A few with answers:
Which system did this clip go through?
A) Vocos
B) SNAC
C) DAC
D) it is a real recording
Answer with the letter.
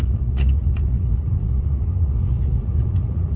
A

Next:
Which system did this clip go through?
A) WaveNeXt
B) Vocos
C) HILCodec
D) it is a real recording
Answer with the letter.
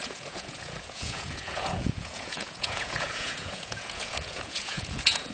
B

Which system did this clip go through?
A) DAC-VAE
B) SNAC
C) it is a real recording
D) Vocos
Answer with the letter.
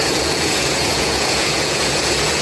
D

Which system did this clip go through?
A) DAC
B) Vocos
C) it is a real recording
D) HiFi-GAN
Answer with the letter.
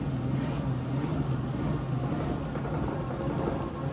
C